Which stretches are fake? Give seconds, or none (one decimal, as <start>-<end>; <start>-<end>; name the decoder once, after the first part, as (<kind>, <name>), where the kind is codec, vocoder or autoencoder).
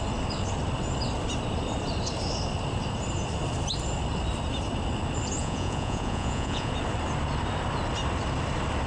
5.4-6.7 (vocoder, Vocos)